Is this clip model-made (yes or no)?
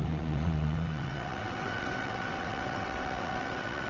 yes